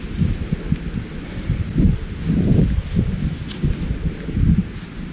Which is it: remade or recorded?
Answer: recorded